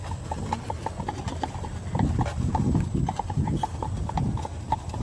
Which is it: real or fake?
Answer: real